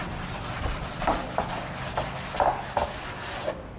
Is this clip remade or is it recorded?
recorded